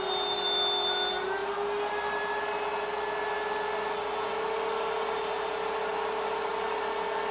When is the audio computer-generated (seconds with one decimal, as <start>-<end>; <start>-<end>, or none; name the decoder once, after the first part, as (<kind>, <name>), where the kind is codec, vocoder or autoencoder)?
none